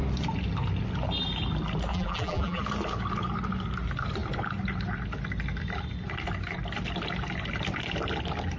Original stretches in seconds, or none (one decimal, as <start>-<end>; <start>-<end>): 0.0-1.9; 2.6-8.6